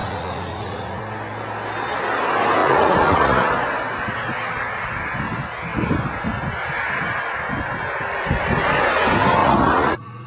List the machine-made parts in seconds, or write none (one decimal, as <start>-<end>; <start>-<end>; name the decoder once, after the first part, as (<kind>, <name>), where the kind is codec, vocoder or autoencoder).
0.0-1.0 (vocoder, Vocos); 2.6-3.5; 9.4-10.3